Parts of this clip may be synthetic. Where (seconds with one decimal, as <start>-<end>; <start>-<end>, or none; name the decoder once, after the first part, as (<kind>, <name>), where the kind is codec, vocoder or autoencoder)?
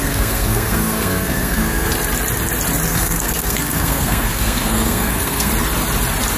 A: 0.0-1.9 (codec, SNAC); 2.9-5.5